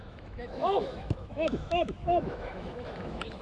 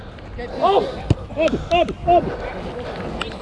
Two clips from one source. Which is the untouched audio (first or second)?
second